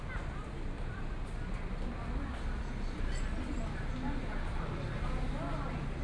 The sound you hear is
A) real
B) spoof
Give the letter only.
A